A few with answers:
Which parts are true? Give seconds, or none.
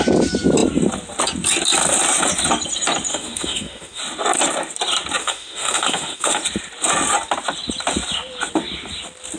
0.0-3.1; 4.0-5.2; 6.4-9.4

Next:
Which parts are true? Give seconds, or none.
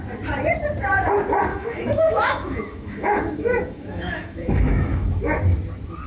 0.0-1.5; 5.2-6.1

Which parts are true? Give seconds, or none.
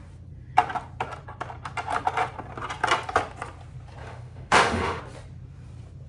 0.0-4.0; 5.0-6.1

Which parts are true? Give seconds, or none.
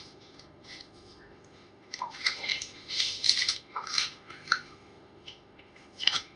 none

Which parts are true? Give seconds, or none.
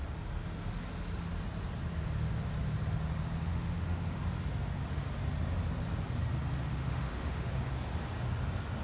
0.0-3.5; 4.2-6.7; 7.5-8.8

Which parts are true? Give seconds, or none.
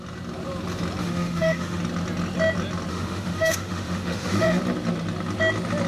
0.0-1.0; 1.8-2.9; 4.6-5.9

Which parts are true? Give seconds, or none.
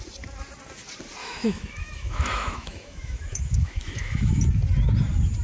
0.0-1.2; 4.4-5.4